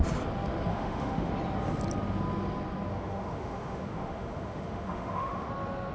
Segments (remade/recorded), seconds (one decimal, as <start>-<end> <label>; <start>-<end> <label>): 0.0-0.7 recorded; 0.7-1.3 remade; 1.3-2.9 recorded; 2.9-5.5 remade; 5.5-5.9 recorded